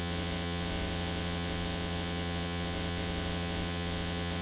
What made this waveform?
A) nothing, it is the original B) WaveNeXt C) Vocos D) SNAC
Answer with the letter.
B